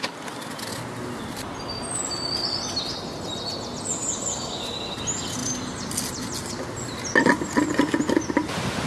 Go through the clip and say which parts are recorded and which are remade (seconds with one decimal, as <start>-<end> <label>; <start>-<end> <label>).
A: 0.0-8.9 recorded